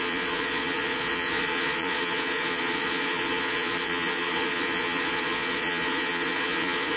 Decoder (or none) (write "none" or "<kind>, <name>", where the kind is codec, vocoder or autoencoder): vocoder, Vocos